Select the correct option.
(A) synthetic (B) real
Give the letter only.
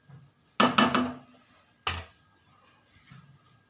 B